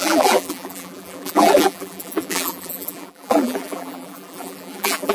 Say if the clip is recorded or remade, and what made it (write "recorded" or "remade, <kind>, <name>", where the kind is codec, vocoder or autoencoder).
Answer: remade, vocoder, BigVGAN v2